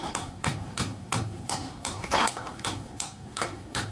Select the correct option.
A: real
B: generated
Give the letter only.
B